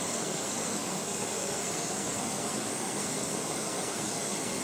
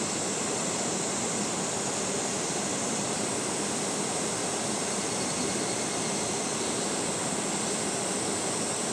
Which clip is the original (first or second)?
second